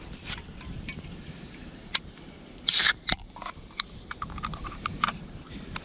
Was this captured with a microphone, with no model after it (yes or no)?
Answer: no